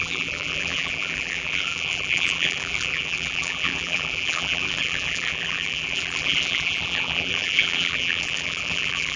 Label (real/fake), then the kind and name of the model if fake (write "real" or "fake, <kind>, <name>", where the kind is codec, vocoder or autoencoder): fake, vocoder, BigVGAN v2